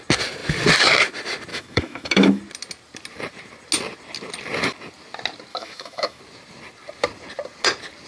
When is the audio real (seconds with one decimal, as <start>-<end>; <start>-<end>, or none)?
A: 0.0-1.5; 2.4-5.5; 6.2-8.1